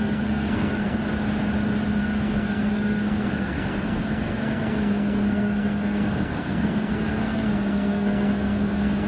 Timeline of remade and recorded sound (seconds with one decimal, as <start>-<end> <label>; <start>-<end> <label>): 0.0-1.0 remade; 1.0-2.0 recorded; 2.0-9.1 remade